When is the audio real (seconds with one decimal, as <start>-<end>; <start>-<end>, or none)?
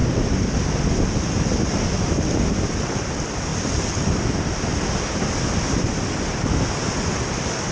0.0-7.7